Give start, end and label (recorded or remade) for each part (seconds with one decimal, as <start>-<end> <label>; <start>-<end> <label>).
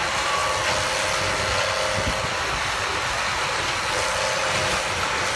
0.0-5.4 recorded